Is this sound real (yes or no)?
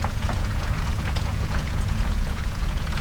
no